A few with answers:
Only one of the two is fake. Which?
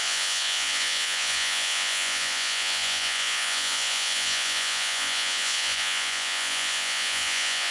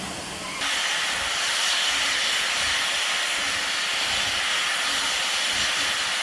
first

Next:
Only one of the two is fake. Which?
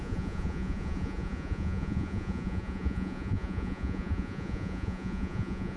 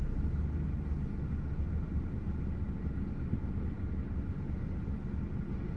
first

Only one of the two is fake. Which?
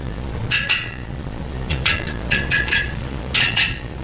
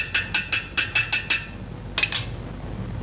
first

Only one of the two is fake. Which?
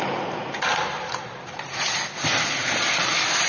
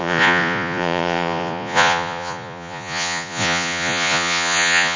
second